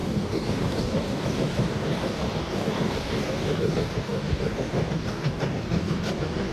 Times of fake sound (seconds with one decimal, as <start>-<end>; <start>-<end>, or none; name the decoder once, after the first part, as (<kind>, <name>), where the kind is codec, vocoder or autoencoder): 0.0-6.5 (codec, DAC)